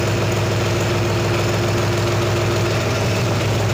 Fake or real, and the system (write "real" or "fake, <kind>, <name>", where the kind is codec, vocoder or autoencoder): real